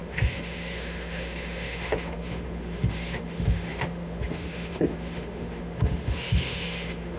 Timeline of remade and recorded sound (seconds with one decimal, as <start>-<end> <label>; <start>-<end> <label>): 0.0-7.2 remade